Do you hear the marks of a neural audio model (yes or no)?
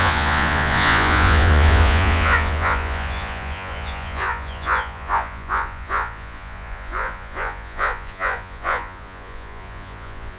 yes